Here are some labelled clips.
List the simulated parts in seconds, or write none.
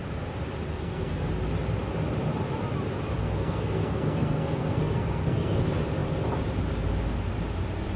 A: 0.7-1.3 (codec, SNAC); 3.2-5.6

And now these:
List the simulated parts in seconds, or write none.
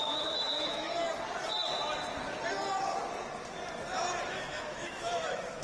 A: 0.0-0.9 (autoencoder, DAC-VAE); 4.3-5.6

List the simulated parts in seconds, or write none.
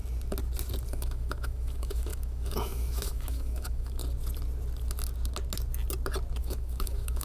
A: 0.9-4.0 (autoencoder, DAC-VAE); 6.4-7.2